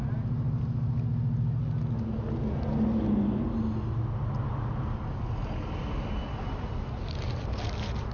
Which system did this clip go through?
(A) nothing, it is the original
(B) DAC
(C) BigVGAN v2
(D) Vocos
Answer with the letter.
A